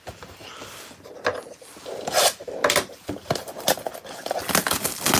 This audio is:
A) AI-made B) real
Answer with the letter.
B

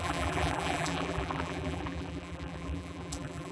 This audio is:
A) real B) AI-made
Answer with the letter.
B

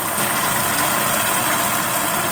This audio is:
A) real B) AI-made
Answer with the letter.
A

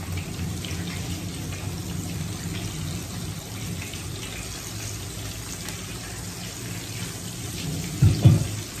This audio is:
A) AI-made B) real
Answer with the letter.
B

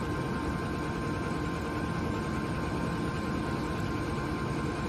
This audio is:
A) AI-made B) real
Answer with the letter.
B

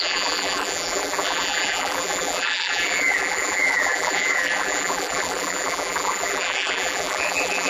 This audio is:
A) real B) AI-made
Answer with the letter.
B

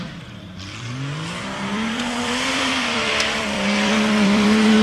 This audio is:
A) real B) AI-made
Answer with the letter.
B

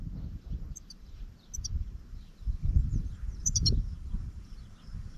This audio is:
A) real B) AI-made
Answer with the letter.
B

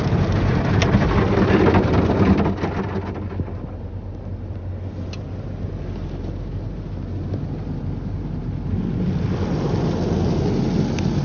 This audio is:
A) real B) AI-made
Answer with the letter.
A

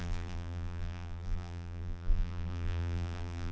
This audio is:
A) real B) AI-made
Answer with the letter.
B